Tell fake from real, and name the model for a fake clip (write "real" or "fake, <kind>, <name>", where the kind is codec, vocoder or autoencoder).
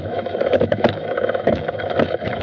fake, autoencoder, DAC-VAE